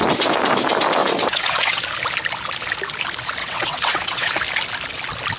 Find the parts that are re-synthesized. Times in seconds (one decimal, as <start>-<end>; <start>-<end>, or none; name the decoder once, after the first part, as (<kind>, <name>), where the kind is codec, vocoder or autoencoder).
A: 1.0-1.8 (vocoder, WaveNeXt); 3.4-4.3